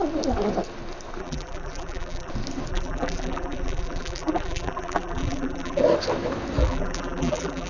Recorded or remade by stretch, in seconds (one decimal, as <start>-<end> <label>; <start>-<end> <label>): 0.0-1.2 recorded; 1.2-2.3 remade; 2.3-2.7 recorded; 2.7-5.8 remade; 5.8-6.6 recorded; 6.6-7.7 remade